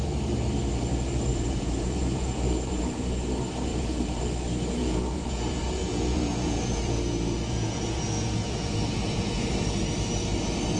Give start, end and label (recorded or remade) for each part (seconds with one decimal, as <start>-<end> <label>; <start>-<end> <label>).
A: 0.0-1.3 recorded; 1.3-2.9 remade; 2.9-3.7 recorded; 3.7-4.2 remade; 4.2-4.8 recorded; 4.8-9.6 remade; 9.6-10.8 recorded